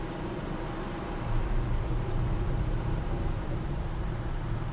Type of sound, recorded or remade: remade